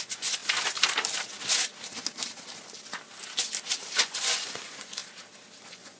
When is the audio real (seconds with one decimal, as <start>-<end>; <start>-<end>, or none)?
0.4-4.0; 5.0-5.6